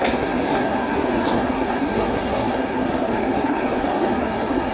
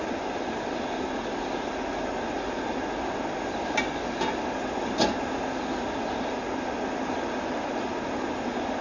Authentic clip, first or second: second